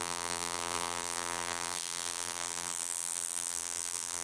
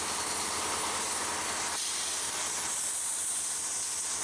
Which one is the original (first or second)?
second